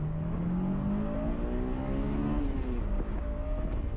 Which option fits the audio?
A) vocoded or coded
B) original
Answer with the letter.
B